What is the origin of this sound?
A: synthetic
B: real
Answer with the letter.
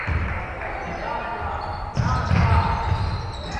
B